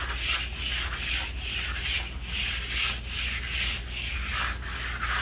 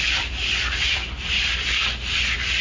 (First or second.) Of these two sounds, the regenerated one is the second